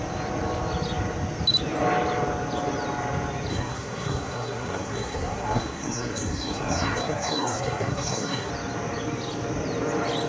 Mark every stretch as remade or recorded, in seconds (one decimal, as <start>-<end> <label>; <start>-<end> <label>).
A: 0.0-3.5 recorded; 3.5-8.5 remade; 8.5-10.3 recorded